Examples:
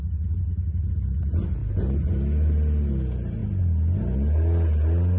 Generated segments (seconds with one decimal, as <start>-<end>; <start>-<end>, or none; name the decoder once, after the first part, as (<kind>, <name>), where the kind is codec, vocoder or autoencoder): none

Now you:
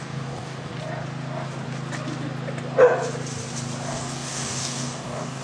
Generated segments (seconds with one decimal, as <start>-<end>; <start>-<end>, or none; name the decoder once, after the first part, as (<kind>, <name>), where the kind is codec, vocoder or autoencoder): 0.0-0.7 (codec, DAC); 3.9-5.4

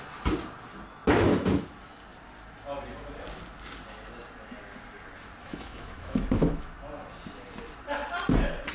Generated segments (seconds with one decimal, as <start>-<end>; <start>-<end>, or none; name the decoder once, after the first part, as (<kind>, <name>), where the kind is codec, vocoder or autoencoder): 5.4-6.7 (autoencoder, DAC-VAE)

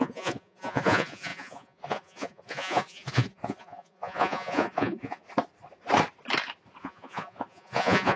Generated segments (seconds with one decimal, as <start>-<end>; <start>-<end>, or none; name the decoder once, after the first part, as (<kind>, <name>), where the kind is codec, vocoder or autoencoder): 0.0-5.2 (vocoder, Vocos); 6.8-8.2

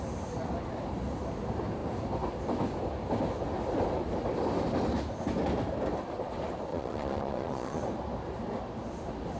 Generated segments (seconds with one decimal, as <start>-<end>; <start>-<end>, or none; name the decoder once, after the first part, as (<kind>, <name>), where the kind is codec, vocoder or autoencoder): 6.7-7.8 (vocoder, Vocos)